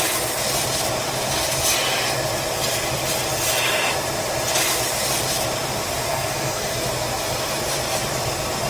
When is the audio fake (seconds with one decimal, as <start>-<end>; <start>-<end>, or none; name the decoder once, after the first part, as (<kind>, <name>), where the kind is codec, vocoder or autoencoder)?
6.1-6.7 (codec, SNAC)